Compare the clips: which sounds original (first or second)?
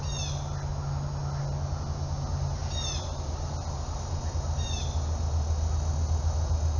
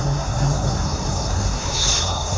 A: first